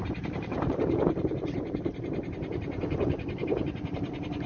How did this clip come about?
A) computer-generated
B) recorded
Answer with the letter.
A